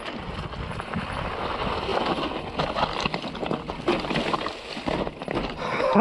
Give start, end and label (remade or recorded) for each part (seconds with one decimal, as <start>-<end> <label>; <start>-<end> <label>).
0.0-6.0 recorded